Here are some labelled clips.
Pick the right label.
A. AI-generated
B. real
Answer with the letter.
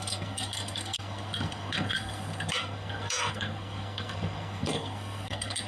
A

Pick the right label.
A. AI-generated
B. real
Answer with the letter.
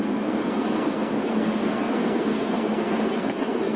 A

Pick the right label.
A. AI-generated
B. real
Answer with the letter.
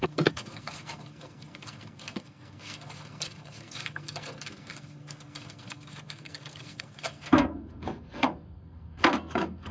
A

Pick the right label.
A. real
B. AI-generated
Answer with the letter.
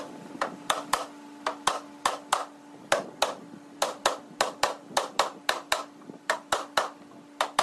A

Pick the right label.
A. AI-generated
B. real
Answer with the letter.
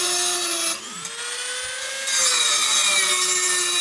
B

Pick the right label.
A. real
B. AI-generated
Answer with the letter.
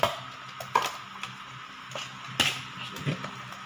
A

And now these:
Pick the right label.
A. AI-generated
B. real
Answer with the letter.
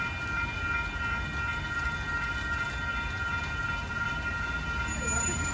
B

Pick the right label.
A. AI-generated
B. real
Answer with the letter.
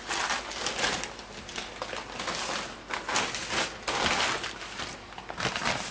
B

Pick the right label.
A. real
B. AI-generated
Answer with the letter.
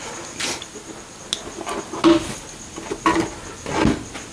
A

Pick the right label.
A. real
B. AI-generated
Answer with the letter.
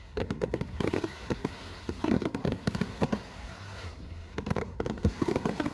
B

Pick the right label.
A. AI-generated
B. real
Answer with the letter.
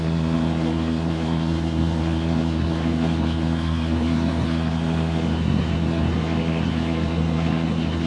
A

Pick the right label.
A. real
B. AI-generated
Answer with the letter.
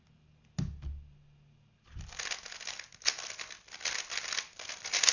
A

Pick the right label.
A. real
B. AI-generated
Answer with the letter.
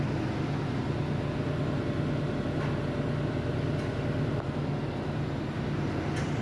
A